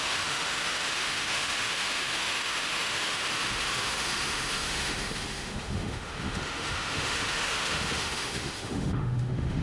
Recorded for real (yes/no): no